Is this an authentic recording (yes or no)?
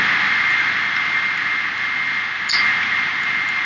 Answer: yes